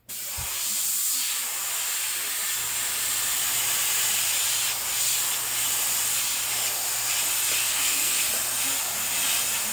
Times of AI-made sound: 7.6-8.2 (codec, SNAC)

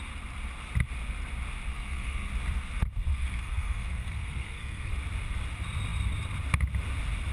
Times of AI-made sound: 1.7-2.3 (codec, SNAC); 3.0-4.9